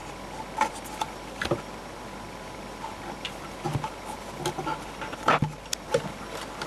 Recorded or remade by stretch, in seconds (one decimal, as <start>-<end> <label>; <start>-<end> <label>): 0.0-6.7 recorded